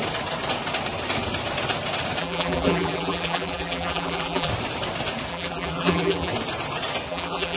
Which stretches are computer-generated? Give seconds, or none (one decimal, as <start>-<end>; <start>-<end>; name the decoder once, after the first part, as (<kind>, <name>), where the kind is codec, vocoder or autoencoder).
2.2-4.5 (vocoder, BigVGAN v2); 5.3-6.3; 7.1-7.6